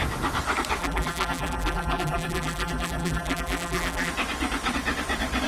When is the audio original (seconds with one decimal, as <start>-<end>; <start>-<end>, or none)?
0.0-0.8; 4.1-5.5